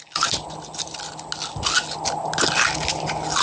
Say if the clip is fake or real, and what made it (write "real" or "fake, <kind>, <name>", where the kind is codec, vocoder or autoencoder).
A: real